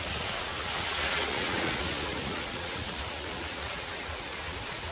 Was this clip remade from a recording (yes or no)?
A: yes